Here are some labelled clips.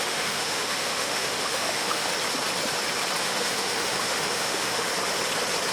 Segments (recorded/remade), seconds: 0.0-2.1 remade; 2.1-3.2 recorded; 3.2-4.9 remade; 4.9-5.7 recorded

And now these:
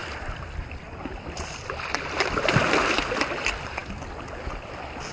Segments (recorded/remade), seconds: 0.0-3.8 remade; 3.8-5.1 recorded

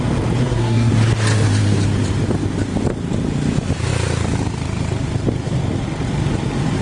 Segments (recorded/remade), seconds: 0.0-0.4 recorded; 0.4-0.9 remade; 0.9-6.8 recorded

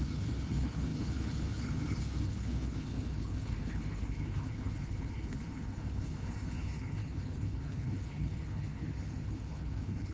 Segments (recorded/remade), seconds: 0.0-10.1 remade